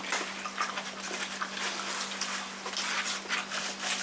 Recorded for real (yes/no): yes